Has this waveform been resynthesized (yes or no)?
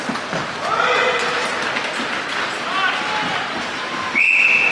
no